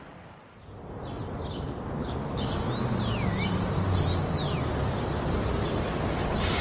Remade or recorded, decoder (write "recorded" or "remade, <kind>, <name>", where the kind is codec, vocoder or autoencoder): recorded